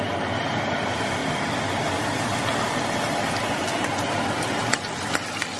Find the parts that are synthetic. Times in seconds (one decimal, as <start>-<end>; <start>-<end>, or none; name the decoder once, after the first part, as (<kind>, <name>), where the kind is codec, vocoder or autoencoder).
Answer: none